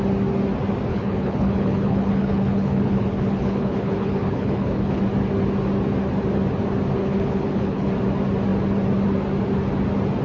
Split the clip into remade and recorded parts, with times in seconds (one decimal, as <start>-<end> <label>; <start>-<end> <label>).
0.0-0.9 recorded; 0.9-5.0 remade; 5.0-7.0 recorded; 7.0-7.9 remade; 7.9-10.2 recorded